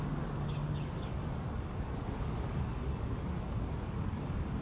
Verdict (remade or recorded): remade